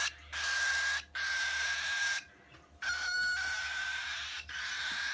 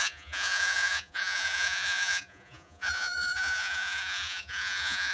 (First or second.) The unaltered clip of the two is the first